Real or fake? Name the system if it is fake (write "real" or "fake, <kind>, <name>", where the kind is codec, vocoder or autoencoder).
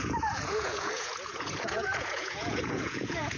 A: fake, vocoder, Vocos